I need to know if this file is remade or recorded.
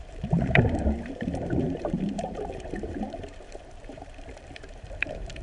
remade